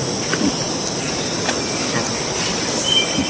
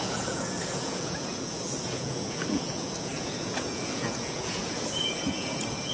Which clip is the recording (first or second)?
first